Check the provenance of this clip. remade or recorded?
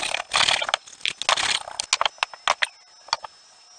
recorded